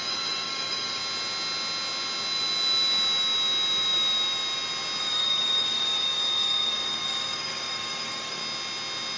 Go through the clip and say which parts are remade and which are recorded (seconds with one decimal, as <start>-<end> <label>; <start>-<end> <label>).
0.0-1.0 remade; 1.0-5.0 recorded; 5.0-8.4 remade; 8.4-9.2 recorded